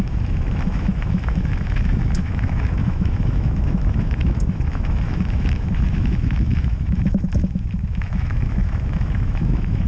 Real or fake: fake